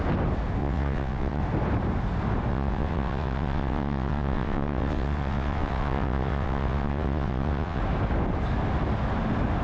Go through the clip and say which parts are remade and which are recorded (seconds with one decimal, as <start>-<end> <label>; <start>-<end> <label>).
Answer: 0.0-0.6 recorded; 0.6-1.4 remade; 1.4-2.5 recorded; 2.5-7.8 remade; 7.8-9.6 recorded